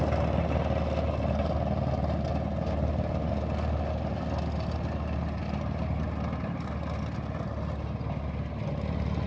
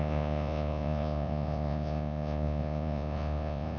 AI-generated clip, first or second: second